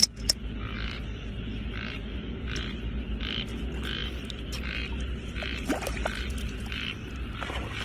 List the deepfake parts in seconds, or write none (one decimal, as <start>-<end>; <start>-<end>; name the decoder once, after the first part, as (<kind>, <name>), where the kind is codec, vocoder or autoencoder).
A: none

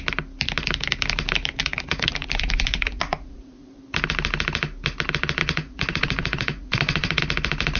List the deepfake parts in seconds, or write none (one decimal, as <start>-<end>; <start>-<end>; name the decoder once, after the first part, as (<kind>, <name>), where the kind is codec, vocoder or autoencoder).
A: 1.6-3.8 (vocoder, Vocos); 5.4-7.2

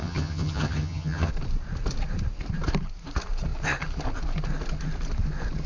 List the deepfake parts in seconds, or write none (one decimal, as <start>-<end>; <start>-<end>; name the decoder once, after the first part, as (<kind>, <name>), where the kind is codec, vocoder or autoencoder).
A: 0.0-1.3 (vocoder, HiFi-GAN)

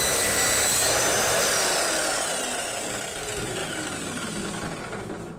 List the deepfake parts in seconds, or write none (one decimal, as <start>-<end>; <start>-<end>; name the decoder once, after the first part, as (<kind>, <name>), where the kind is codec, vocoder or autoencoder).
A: none

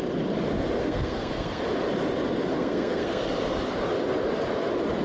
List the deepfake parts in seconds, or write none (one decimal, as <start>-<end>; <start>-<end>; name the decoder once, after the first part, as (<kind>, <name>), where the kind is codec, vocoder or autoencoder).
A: 0.8-1.6 (codec, SNAC); 2.5-3.2

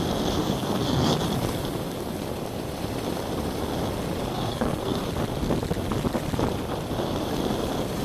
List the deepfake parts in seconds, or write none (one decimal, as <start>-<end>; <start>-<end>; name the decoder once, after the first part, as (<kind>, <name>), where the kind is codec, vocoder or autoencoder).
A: 0.4-1.1 (codec, SNAC); 4.3-5.0